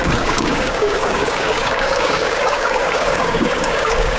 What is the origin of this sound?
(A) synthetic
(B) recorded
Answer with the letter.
A